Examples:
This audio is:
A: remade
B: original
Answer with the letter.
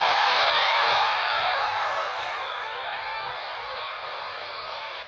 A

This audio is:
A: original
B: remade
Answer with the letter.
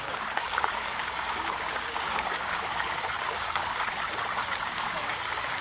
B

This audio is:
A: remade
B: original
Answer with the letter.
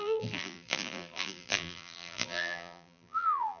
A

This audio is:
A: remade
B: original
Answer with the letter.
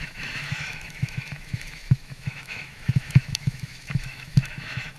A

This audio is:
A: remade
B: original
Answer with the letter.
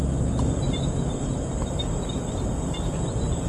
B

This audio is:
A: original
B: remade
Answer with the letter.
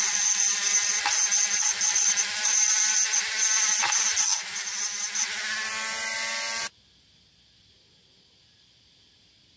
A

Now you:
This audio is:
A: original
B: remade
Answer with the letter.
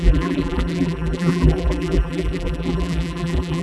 B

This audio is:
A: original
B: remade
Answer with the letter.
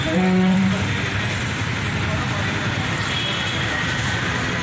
B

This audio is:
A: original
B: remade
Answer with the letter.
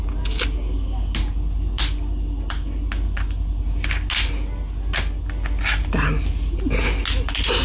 A